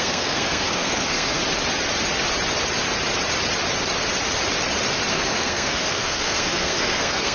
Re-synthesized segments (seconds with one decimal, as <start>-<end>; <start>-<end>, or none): 0.0-1.4; 5.1-7.3